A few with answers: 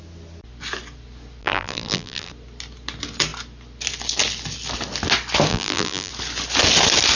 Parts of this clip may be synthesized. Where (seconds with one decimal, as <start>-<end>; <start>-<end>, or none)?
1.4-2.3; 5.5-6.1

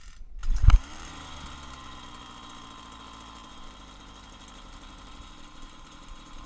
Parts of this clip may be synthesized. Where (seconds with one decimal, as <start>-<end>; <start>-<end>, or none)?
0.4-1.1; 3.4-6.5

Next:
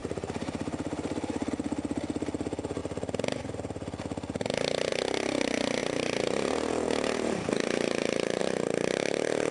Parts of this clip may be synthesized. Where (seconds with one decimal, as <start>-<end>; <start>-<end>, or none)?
0.0-1.5; 5.8-8.4

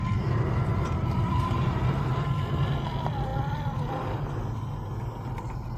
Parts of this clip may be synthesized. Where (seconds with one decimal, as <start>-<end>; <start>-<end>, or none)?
0.7-2.4

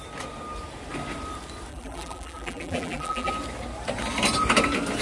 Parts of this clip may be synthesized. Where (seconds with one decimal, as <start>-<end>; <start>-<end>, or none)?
1.7-3.3